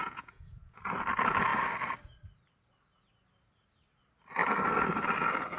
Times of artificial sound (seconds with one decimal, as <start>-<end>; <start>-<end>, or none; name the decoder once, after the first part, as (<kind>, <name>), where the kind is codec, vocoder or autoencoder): 0.0-0.8 (vocoder, Vocos)